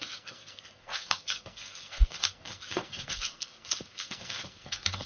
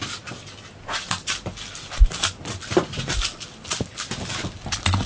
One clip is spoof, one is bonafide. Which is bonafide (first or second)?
second